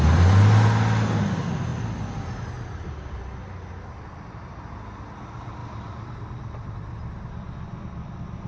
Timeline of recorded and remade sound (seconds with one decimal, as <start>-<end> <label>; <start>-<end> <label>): 0.0-5.6 recorded; 5.6-7.2 remade; 7.2-8.5 recorded